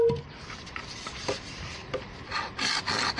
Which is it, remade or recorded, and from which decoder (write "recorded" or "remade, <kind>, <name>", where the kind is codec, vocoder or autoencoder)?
recorded